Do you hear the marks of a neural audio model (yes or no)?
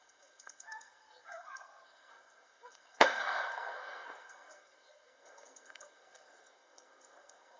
yes